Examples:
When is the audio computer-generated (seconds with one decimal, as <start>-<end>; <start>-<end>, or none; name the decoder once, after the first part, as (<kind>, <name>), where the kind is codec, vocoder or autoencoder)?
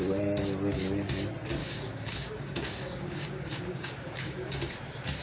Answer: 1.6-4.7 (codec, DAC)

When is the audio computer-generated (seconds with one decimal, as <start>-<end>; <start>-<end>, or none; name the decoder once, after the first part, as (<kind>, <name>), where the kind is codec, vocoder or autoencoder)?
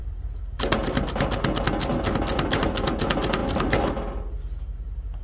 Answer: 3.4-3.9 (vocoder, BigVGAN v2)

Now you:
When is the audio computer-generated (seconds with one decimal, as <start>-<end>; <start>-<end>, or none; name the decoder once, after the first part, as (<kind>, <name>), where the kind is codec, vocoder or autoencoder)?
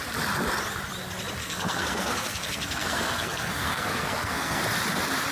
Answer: 1.4-4.6 (codec, SNAC)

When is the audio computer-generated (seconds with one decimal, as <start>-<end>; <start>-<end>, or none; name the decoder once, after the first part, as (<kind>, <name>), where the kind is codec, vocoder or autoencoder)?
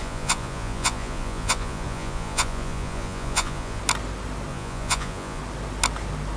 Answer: 0.0-3.8 (vocoder, Vocos); 4.5-5.4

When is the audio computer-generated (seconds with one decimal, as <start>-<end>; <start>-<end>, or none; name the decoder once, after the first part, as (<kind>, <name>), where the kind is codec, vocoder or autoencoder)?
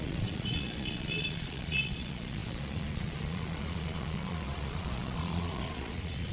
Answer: 0.0-6.3 (vocoder, Vocos)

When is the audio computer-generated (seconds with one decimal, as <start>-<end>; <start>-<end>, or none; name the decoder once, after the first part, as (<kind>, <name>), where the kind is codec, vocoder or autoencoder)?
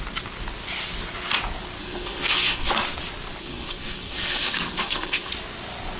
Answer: 1.8-2.7 (codec, SNAC); 3.4-5.3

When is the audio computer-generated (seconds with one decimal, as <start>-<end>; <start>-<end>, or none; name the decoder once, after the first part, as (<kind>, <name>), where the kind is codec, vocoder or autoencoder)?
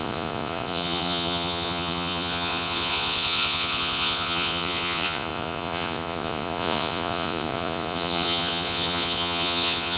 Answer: 0.0-10.0 (vocoder, Vocos)